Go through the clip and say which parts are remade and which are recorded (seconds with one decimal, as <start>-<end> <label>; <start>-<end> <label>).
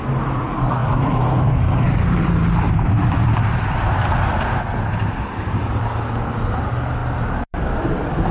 0.0-0.8 recorded; 0.8-5.8 remade; 5.8-7.0 recorded; 7.0-8.3 remade